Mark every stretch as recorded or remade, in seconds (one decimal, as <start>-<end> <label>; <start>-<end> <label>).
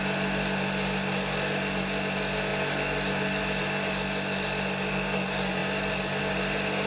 0.0-6.9 recorded